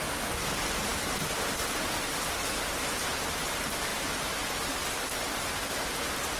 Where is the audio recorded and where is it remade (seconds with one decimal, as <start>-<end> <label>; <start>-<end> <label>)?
0.0-0.9 recorded; 0.9-3.0 remade; 3.0-6.4 recorded